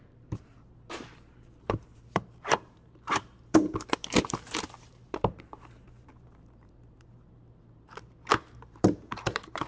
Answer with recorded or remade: remade